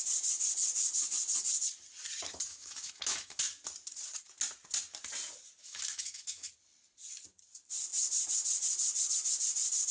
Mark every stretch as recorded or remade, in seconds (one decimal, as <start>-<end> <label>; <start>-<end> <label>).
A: 0.0-2.5 recorded; 2.5-3.4 remade; 3.4-5.6 recorded; 5.6-6.5 remade; 6.5-9.9 recorded